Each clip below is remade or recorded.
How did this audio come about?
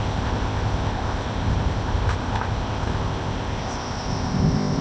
remade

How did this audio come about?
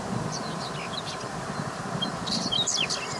recorded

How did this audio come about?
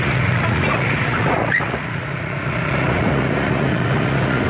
remade